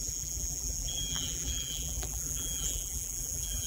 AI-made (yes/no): yes